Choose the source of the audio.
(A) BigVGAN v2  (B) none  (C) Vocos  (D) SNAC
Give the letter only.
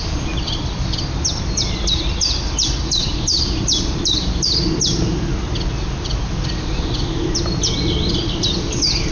B